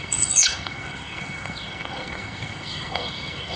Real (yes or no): no